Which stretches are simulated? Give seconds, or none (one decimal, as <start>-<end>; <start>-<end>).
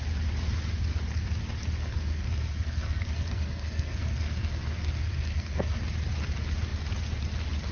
1.8-5.8